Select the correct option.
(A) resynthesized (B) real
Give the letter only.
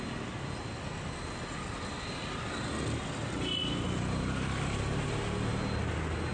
B